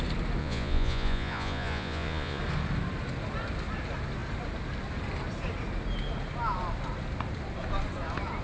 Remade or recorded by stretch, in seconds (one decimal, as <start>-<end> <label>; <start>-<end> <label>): 0.0-0.4 recorded; 0.4-2.4 remade; 2.4-8.4 recorded

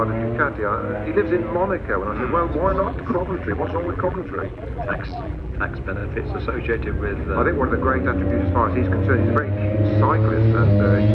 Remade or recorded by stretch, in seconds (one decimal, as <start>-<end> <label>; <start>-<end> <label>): 0.0-2.7 recorded; 2.7-5.6 remade; 5.6-11.1 recorded

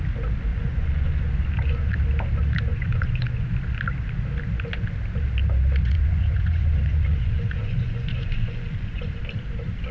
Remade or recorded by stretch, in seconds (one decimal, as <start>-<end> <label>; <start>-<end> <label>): 0.0-0.5 recorded; 0.5-1.2 remade; 1.2-2.7 recorded; 2.7-3.5 remade; 3.5-5.8 recorded; 5.8-9.2 remade; 9.2-9.9 recorded

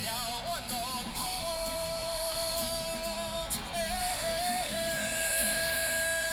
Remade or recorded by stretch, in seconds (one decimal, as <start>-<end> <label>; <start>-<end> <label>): 0.0-1.1 recorded; 1.1-2.6 remade; 2.6-4.0 recorded; 4.0-6.3 remade

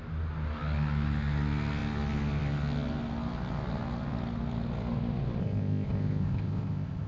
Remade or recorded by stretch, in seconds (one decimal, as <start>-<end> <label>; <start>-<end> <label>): 0.0-5.4 recorded; 5.4-7.1 remade

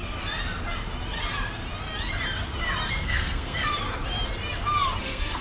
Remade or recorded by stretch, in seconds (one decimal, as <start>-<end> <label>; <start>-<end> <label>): 0.0-2.9 recorded; 2.9-3.8 remade; 3.8-5.0 recorded; 5.0-5.4 remade